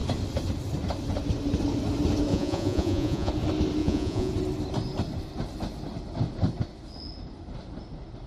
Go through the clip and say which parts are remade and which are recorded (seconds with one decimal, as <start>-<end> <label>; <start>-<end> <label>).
0.0-2.3 recorded; 2.3-3.3 remade; 3.3-3.8 recorded; 3.8-4.3 remade; 4.3-8.3 recorded